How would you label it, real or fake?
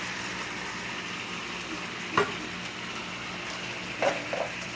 real